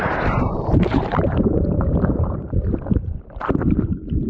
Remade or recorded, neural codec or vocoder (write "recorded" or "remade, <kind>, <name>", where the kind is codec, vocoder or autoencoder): remade, vocoder, BigVGAN v2